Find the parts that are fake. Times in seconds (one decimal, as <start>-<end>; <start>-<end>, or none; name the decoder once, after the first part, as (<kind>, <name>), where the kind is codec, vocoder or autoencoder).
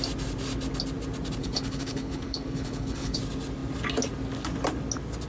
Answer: 1.4-3.2 (codec, HILCodec)